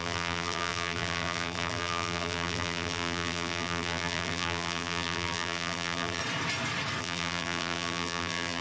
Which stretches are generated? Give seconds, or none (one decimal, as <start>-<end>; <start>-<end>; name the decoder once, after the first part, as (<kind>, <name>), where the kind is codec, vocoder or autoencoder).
0.0-6.2 (vocoder, BigVGAN v2); 7.0-8.6